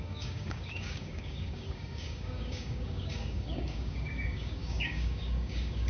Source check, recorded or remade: remade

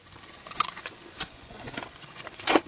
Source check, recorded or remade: remade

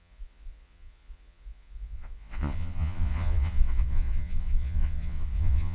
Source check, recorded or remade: remade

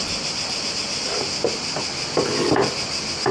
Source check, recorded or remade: remade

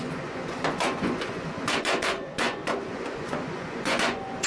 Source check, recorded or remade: remade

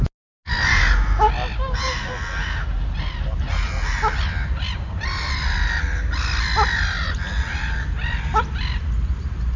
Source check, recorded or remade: recorded